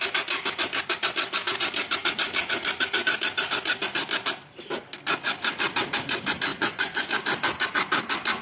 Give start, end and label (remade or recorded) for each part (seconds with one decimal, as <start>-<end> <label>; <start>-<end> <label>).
0.0-6.5 recorded; 6.5-7.1 remade; 7.1-8.4 recorded